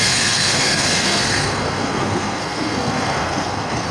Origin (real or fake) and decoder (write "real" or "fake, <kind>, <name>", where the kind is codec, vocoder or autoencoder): fake, codec, SNAC